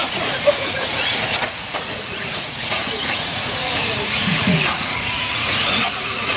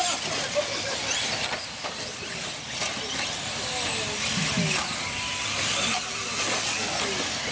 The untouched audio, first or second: second